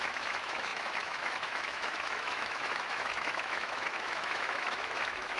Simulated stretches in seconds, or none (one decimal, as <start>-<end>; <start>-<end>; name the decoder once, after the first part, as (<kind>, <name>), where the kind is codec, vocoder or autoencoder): 0.0-5.4 (autoencoder, DAC-VAE)

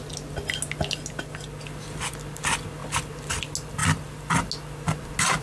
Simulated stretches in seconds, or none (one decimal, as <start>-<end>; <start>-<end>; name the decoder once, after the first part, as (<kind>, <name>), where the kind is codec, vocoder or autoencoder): none

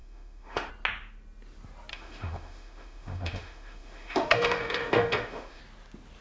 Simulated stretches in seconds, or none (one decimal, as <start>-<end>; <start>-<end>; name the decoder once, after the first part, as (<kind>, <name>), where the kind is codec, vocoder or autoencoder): 0.0-0.7 (autoencoder, DAC-VAE); 1.9-5.6

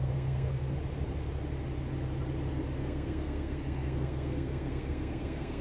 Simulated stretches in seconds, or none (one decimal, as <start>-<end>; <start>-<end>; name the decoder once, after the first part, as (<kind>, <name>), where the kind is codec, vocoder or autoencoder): 0.0-0.7 (codec, SNAC); 2.8-5.6